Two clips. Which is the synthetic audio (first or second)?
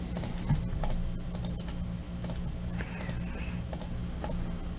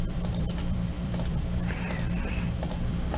second